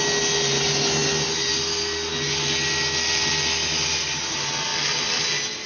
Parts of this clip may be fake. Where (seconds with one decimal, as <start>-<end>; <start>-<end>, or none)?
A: none